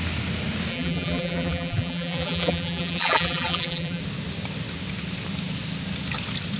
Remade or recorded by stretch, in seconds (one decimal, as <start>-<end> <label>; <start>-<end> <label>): 0.0-0.7 recorded; 0.7-4.0 remade; 4.0-6.6 recorded